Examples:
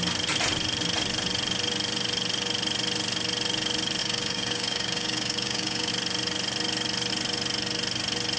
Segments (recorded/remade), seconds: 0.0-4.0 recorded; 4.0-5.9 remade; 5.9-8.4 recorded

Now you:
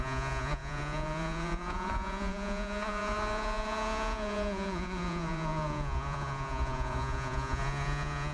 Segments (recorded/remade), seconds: 0.0-8.3 remade

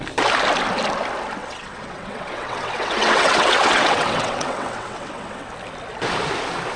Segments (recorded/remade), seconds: 0.0-1.4 recorded; 1.4-5.5 remade; 5.5-6.8 recorded

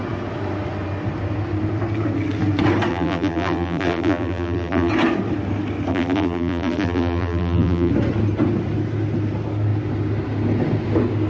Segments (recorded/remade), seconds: 0.0-2.9 recorded; 2.9-4.9 remade; 4.9-5.9 recorded; 5.9-7.9 remade; 7.9-11.3 recorded

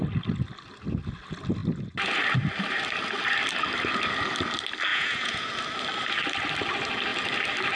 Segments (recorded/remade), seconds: 0.0-4.9 recorded; 4.9-5.5 remade; 5.5-7.8 recorded